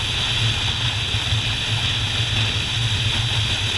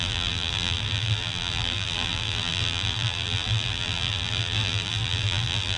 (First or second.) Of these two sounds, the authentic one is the first